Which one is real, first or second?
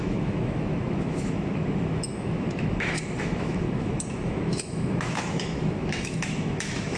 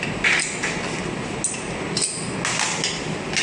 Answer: second